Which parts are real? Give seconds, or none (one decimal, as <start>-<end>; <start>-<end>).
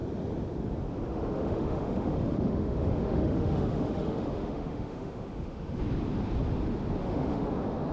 0.0-1.1; 5.8-7.0; 7.5-7.9